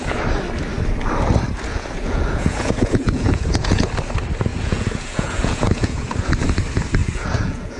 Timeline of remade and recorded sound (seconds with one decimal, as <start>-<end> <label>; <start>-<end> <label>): 0.0-1.7 recorded; 1.7-3.9 remade; 3.9-4.5 recorded; 4.5-6.3 remade; 6.3-7.0 recorded; 7.0-7.8 remade